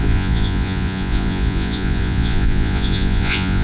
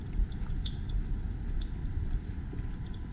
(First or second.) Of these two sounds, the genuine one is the second